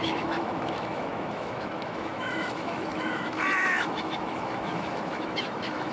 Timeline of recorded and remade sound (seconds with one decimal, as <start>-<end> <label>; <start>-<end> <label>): 0.0-5.9 remade